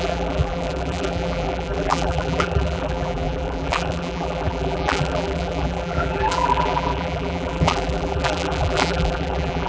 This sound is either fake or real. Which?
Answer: fake